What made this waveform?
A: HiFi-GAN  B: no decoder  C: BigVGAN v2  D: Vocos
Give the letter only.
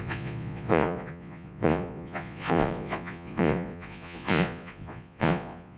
D